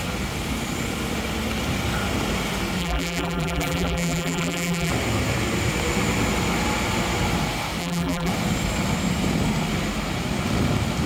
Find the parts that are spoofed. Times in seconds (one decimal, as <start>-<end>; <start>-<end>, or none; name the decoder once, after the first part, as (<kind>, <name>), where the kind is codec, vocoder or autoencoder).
2.8-4.9 (vocoder, BigVGAN v2); 7.8-8.3